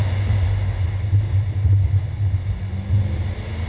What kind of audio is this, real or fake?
real